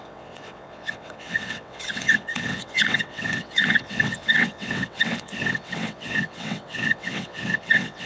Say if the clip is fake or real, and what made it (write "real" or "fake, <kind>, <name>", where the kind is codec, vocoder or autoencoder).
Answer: fake, vocoder, WaveNeXt